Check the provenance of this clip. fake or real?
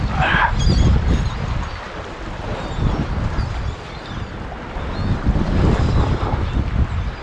real